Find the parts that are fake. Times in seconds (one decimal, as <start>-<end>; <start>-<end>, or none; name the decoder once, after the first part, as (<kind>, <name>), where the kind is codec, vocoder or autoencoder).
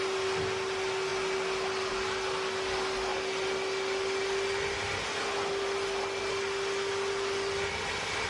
none